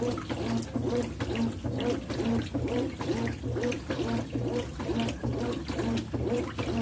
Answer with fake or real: real